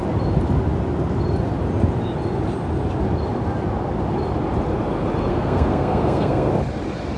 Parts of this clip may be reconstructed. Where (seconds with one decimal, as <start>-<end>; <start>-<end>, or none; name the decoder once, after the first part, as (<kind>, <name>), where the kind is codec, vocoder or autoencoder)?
5.3-6.5 (codec, SNAC)